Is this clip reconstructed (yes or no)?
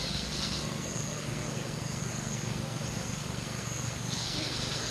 yes